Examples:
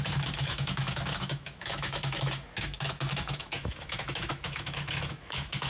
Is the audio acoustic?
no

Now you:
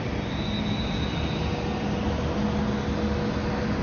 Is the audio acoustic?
yes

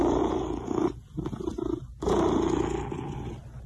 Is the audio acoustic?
yes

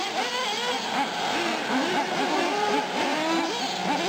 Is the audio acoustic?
yes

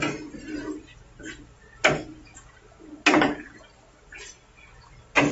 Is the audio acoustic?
yes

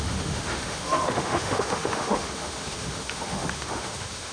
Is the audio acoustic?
no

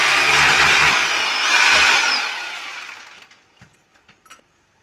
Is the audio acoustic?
yes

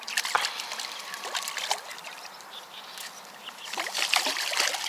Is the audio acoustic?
yes